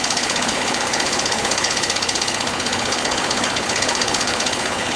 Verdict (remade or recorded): remade